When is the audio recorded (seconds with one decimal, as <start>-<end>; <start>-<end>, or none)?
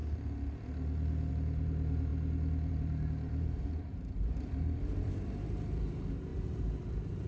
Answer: 0.0-1.3; 2.1-2.7